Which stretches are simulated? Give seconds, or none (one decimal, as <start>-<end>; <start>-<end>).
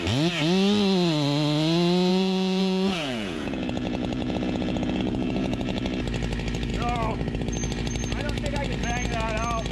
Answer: 2.1-5.8